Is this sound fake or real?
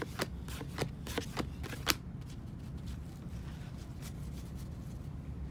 real